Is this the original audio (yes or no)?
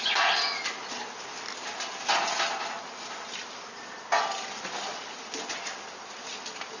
yes